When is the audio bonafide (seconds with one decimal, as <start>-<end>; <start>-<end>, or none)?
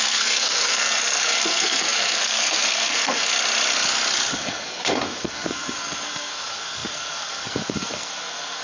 3.3-4.3